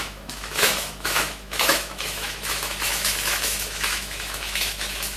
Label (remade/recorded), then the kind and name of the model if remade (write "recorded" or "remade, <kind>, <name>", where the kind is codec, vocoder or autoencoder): remade, autoencoder, DAC-VAE